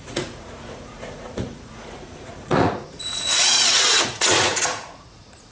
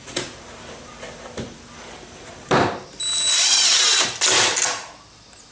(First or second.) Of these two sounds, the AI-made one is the first